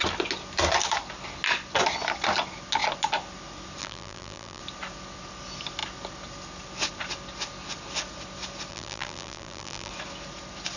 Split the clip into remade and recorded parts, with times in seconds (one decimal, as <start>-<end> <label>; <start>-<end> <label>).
0.0-3.8 recorded; 3.8-4.6 remade; 4.6-8.7 recorded; 8.7-9.9 remade; 9.9-10.8 recorded